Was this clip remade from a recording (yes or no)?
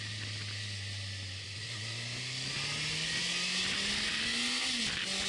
no